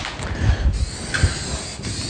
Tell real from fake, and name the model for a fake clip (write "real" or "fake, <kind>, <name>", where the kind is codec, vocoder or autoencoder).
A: real